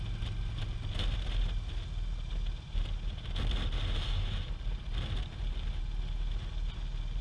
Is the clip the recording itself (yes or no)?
yes